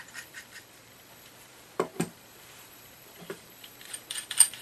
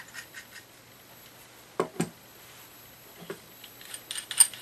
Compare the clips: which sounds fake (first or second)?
first